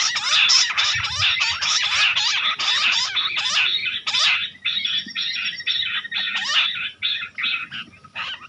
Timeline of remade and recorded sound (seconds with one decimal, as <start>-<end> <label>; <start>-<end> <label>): 0.0-8.5 recorded